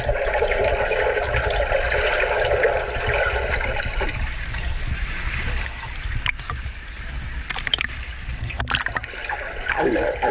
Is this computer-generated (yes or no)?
no